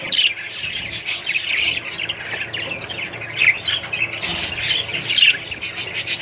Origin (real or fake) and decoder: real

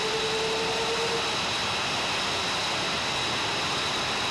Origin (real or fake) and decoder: real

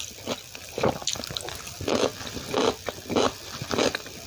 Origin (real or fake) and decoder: real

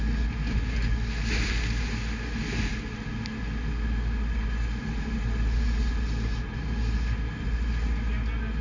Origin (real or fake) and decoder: real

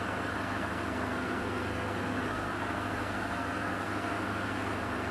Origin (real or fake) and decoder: fake, codec, SNAC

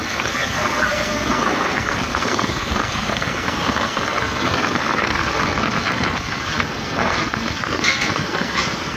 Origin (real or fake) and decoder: fake, codec, SNAC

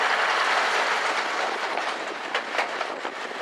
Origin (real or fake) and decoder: real